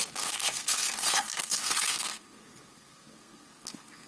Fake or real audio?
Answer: fake